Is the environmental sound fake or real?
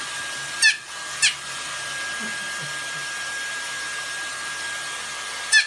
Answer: real